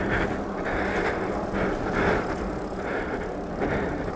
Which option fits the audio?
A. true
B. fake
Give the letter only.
A